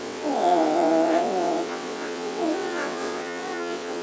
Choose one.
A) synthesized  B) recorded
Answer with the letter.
A